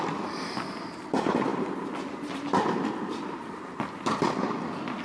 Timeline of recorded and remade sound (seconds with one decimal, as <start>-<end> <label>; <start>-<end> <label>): 0.0-5.0 recorded